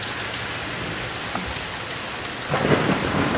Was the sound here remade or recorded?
recorded